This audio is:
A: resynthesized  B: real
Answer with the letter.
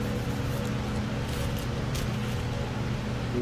B